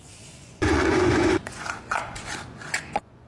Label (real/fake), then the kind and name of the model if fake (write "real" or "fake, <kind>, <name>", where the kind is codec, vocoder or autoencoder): fake, vocoder, Vocos